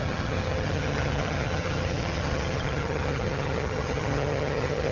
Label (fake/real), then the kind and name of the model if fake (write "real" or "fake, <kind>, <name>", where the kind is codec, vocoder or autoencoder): fake, vocoder, HiFi-GAN